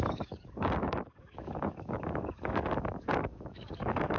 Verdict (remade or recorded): remade